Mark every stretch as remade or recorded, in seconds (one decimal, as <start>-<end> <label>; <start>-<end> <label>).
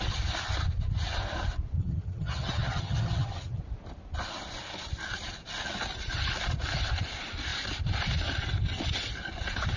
0.0-1.8 recorded; 1.8-3.6 remade; 3.6-9.8 recorded